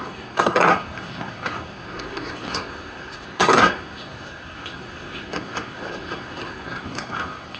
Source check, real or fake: fake